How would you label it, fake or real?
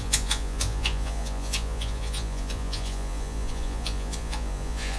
fake